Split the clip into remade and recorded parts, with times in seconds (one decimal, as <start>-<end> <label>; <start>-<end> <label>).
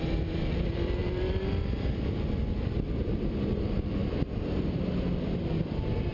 0.0-4.0 remade; 4.0-5.1 recorded; 5.1-6.1 remade